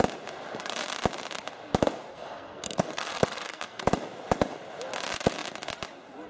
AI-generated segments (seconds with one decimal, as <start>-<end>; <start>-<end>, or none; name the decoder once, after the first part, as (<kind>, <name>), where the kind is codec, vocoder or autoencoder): 2.1-3.8 (codec, SNAC)

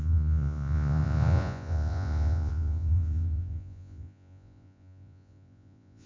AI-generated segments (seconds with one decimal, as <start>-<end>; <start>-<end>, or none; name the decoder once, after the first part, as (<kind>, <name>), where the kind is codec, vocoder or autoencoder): 0.0-6.1 (vocoder, Vocos)

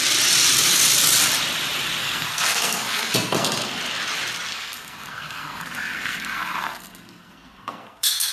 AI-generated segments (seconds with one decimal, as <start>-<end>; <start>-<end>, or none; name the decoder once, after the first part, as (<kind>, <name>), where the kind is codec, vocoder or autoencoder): 2.0-3.8 (codec, SNAC); 4.5-8.3

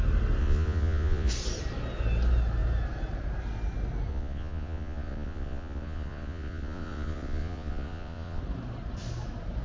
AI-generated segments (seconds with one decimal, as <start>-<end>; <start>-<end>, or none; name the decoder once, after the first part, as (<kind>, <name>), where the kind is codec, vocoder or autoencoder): 0.4-1.3 (vocoder, Vocos); 4.1-8.4

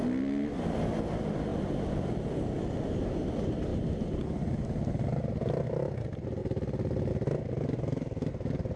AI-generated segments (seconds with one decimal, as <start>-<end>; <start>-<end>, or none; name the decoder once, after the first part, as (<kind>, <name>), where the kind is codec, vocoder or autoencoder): none

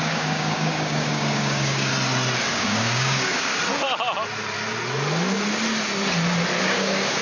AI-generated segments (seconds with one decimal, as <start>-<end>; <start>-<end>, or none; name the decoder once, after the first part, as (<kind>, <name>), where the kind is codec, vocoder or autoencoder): 0.0-1.9 (codec, DAC); 2.5-3.5; 6.6-7.2